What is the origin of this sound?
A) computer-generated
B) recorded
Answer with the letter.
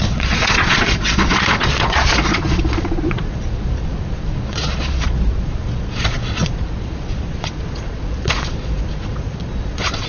A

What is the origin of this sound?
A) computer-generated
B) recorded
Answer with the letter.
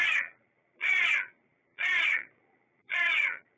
A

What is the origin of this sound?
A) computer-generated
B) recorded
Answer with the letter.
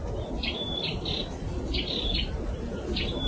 B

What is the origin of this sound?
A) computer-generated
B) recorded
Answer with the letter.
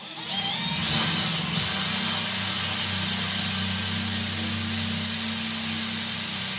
B